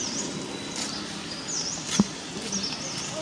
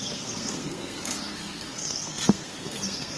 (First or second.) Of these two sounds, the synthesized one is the second